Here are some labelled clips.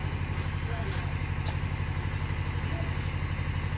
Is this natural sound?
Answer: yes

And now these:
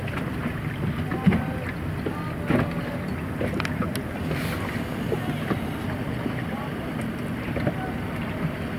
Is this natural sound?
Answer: yes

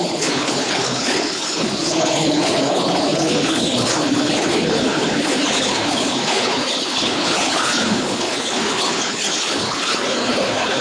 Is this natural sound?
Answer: no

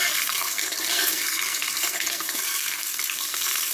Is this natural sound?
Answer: no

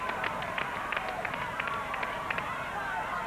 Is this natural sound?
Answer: no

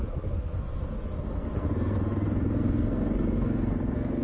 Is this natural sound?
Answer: no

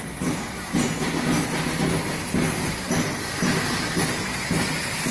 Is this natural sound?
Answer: yes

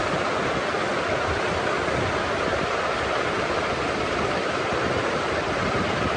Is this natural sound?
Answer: yes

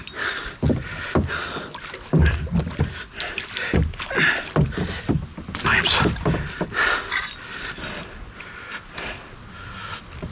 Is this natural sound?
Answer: yes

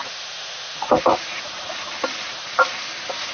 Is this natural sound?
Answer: no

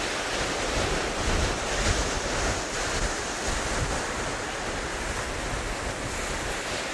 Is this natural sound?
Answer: yes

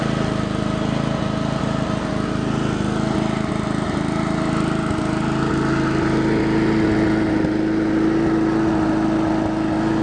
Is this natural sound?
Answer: yes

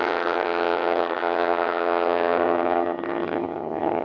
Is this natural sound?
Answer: no